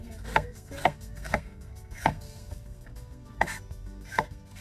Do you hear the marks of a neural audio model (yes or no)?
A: yes